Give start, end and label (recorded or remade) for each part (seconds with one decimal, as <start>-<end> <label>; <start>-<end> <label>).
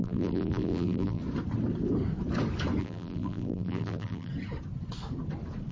0.0-1.2 remade; 1.2-2.8 recorded; 2.8-4.3 remade; 4.3-5.7 recorded